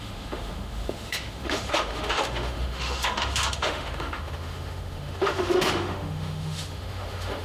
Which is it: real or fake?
fake